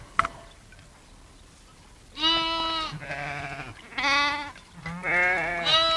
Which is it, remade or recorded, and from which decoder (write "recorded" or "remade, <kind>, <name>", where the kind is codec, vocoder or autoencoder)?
recorded